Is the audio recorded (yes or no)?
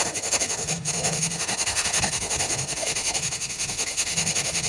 no